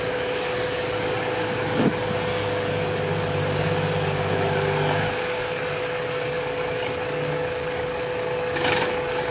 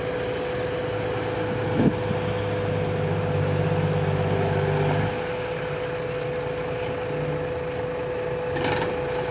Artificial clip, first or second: first